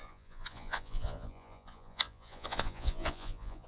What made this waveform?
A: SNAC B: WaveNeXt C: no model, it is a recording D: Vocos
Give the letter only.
D